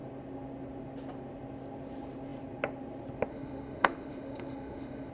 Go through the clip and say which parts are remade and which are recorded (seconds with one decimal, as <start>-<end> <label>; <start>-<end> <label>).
0.0-3.3 recorded; 3.3-5.1 remade